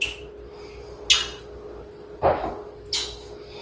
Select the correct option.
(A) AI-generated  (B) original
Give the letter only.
B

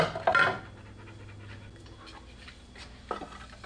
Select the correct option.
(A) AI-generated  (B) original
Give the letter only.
B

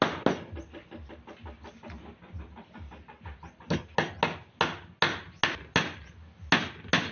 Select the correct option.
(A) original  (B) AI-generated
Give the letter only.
A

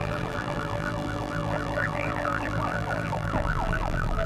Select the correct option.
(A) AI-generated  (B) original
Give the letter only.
A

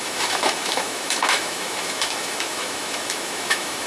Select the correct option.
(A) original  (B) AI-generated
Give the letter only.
B